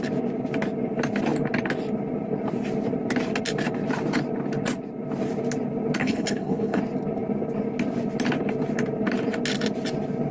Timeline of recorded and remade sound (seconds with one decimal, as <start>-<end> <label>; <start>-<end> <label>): 0.0-6.0 recorded; 6.0-6.8 remade; 6.8-10.3 recorded